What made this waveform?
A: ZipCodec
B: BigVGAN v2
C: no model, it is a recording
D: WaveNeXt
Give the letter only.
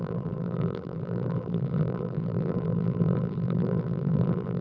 B